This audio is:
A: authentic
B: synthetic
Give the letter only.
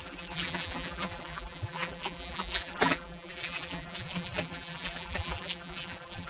B